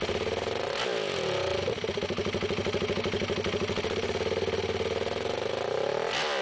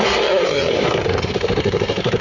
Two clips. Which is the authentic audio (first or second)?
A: first